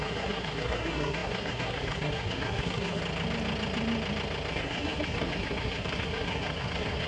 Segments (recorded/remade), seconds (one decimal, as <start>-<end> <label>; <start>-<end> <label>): 0.0-3.0 remade; 3.0-4.5 recorded; 4.5-7.1 remade